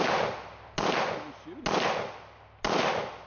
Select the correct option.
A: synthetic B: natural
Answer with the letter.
B